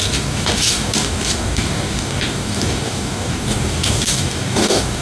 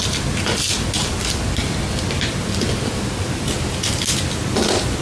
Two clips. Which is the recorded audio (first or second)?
second